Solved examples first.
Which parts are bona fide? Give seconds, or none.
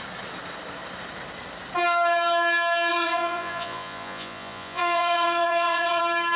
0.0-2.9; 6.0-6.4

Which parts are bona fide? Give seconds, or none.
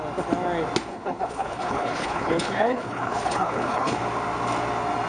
0.0-0.9; 4.0-5.1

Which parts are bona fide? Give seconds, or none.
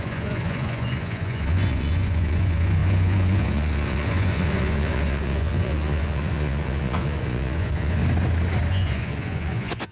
8.0-8.7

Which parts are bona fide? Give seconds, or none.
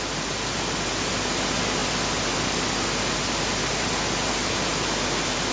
0.0-5.5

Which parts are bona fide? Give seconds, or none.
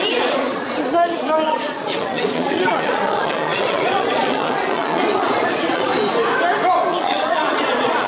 5.9-6.9